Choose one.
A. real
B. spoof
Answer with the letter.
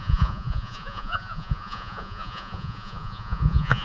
B